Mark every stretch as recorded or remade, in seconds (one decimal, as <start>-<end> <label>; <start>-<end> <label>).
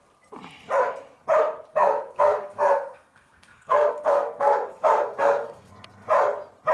0.0-1.7 recorded; 1.7-5.7 remade; 5.7-6.7 recorded